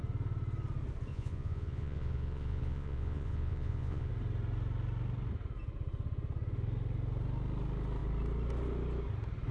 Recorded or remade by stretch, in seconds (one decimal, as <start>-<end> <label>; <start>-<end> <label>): 0.0-1.1 recorded; 1.1-4.1 remade; 4.1-9.5 recorded